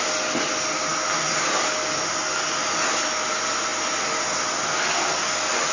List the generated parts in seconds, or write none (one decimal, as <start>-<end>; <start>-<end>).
none